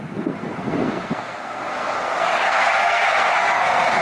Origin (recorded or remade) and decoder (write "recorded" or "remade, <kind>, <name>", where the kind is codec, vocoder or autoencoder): remade, codec, SNAC